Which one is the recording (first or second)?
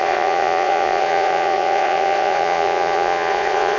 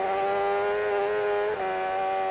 second